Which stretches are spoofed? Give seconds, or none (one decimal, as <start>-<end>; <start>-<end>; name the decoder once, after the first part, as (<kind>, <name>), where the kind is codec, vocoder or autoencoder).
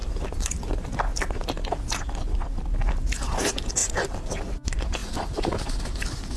0.0-0.7 (vocoder, BigVGAN v2); 3.8-4.4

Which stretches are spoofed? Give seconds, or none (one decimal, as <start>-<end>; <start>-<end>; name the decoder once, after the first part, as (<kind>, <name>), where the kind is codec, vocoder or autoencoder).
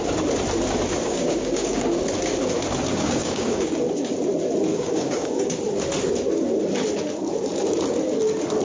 1.0-1.8 (codec, DAC); 2.9-3.8; 4.7-5.6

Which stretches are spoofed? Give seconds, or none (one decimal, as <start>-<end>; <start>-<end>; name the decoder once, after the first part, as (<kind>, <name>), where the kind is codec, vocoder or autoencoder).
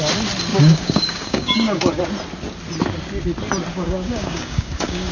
0.5-2.0 (codec, DAC); 3.7-5.1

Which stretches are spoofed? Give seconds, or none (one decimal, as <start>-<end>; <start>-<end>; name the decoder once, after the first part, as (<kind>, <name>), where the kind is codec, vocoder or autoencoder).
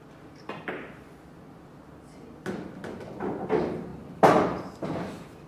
none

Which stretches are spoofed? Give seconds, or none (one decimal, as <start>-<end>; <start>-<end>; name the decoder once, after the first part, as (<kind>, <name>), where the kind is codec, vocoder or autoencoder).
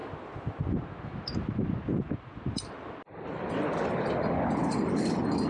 none